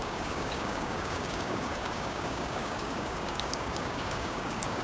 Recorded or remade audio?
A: remade